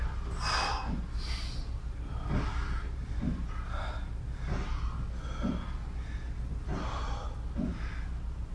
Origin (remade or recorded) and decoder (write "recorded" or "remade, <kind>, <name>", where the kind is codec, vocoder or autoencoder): recorded